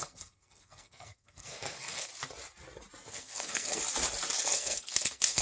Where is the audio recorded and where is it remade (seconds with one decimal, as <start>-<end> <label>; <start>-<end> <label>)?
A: 0.0-2.1 remade; 2.1-3.1 recorded; 3.1-3.8 remade; 3.8-4.4 recorded; 4.4-5.4 remade